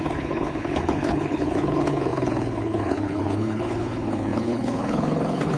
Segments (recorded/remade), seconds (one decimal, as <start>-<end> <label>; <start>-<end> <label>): 0.0-5.6 remade